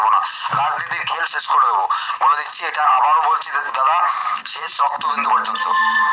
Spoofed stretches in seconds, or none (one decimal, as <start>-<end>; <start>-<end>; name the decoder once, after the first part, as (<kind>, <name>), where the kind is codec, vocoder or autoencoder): 4.2-5.3 (vocoder, BigVGAN v2)